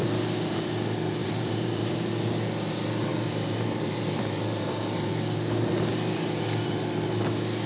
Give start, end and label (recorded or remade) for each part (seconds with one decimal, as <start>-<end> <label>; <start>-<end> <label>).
0.0-1.2 recorded; 1.2-2.1 remade; 2.1-3.1 recorded; 3.1-5.1 remade; 5.1-7.7 recorded